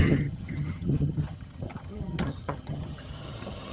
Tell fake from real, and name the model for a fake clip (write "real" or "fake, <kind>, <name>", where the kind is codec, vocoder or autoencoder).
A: fake, vocoder, HiFi-GAN